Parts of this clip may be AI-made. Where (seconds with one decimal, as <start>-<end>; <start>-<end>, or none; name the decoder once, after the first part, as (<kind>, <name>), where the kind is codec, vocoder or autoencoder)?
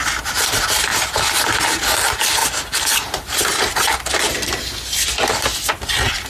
2.4-4.1 (vocoder, BigVGAN v2)